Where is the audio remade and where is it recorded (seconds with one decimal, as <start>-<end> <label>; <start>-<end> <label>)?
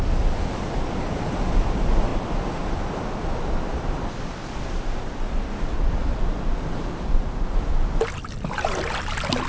0.0-9.5 recorded